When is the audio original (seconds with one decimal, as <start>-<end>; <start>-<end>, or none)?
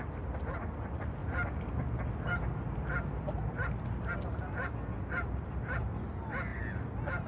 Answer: 0.0-7.3